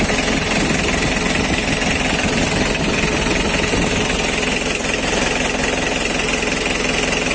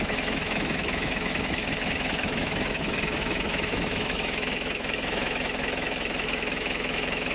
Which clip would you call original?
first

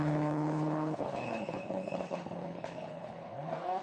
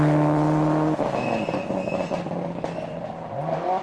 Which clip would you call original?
second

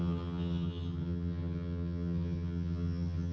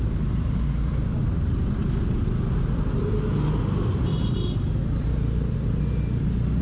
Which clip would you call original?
second